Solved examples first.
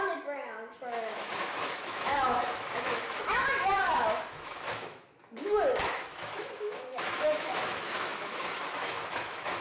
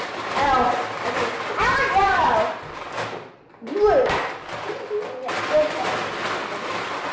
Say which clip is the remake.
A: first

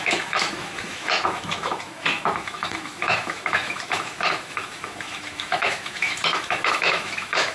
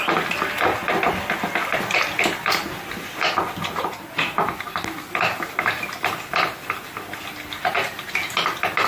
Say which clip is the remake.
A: first